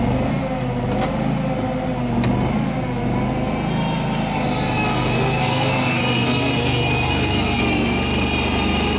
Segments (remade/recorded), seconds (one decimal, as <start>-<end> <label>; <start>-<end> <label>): 0.0-4.9 recorded; 4.9-7.6 remade; 7.6-9.0 recorded